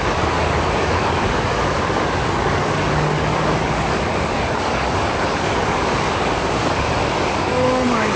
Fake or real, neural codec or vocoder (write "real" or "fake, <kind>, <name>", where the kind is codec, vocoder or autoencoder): fake, codec, DAC